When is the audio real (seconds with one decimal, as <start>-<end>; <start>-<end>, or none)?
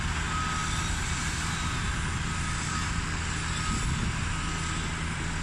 0.0-5.4